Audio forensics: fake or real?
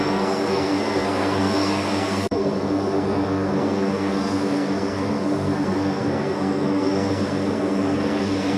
fake